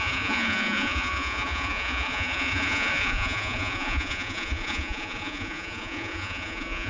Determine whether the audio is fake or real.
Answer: fake